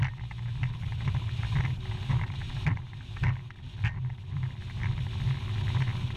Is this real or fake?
real